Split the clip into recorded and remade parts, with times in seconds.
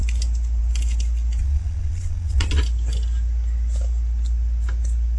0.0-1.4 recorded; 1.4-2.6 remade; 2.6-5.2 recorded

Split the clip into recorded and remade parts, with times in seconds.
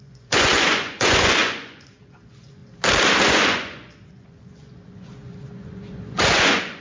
0.0-2.6 remade; 2.6-3.2 recorded; 3.2-6.8 remade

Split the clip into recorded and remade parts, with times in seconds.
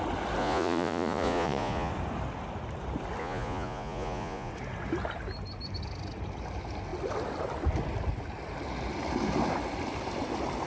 0.0-0.4 recorded; 0.4-1.9 remade; 1.9-3.2 recorded; 3.2-4.5 remade; 4.5-10.7 recorded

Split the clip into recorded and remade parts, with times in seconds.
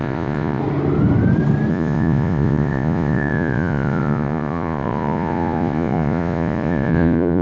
0.0-0.6 remade; 0.6-1.7 recorded; 1.7-7.4 remade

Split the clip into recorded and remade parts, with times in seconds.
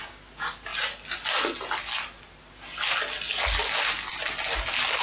0.0-5.0 recorded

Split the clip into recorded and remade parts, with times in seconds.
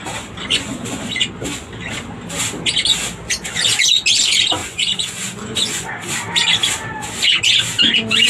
0.0-0.5 recorded; 0.5-1.7 remade; 1.7-4.6 recorded; 4.6-5.9 remade; 5.9-8.3 recorded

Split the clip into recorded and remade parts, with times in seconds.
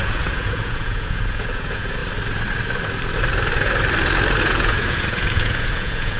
0.0-2.0 remade; 2.0-4.4 recorded; 4.4-6.2 remade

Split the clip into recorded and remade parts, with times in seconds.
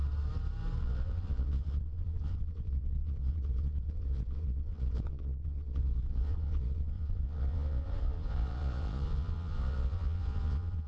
0.0-0.8 recorded; 0.8-10.9 remade